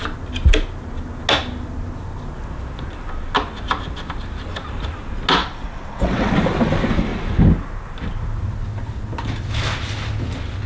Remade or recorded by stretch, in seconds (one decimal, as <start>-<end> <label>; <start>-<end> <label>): 0.0-5.4 recorded; 5.4-6.3 remade; 6.3-10.7 recorded